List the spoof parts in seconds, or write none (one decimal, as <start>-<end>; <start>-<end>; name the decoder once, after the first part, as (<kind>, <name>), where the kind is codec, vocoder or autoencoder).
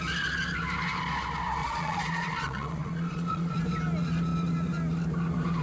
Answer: 1.6-3.6 (vocoder, Vocos)